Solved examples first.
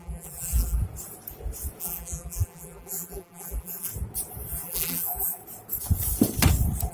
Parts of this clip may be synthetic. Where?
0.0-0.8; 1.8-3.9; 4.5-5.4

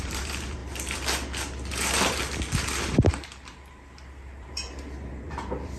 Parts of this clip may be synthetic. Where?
0.0-0.6; 2.8-5.8

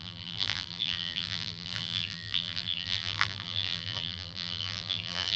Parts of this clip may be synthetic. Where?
0.0-5.4

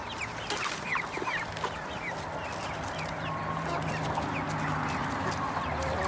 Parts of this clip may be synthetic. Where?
0.0-2.7; 3.4-3.9; 5.0-6.1